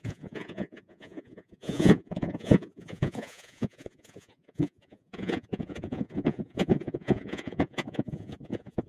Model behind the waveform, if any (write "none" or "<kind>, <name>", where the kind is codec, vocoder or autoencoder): vocoder, Vocos